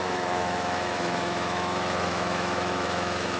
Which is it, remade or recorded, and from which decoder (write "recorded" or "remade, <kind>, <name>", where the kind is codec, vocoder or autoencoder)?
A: remade, autoencoder, DAC-VAE